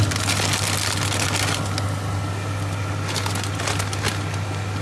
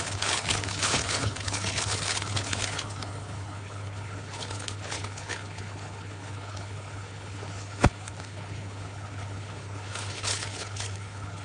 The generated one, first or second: second